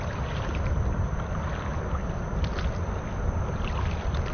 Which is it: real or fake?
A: real